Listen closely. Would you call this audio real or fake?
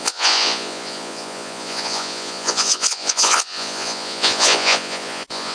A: fake